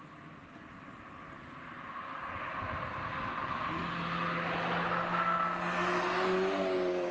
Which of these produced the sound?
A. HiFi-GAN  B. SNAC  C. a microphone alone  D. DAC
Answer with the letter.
C